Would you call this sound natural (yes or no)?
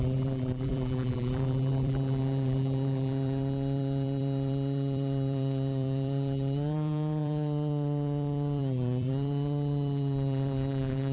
no